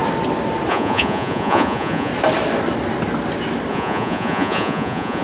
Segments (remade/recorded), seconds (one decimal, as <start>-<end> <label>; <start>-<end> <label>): 0.0-0.7 recorded; 0.7-2.1 remade; 2.1-3.7 recorded; 3.7-5.2 remade